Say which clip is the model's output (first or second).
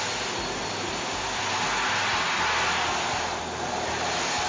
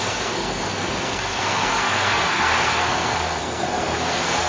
second